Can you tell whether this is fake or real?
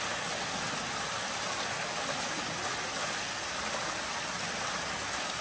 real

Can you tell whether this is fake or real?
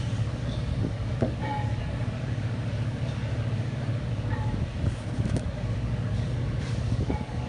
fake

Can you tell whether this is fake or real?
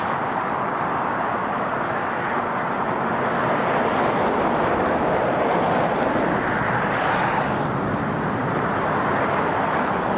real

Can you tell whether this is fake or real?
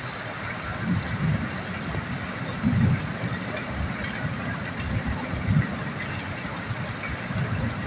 real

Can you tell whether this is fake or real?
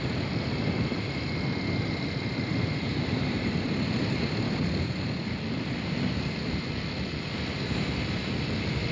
real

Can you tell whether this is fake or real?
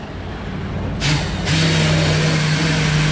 real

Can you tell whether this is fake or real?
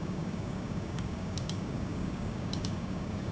fake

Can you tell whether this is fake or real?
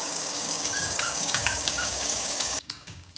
fake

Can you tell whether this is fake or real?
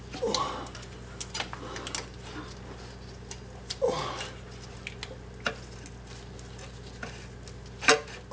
real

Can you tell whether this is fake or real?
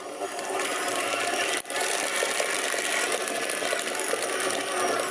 real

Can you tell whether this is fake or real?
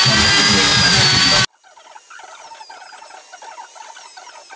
real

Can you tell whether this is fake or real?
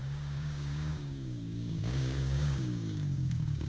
fake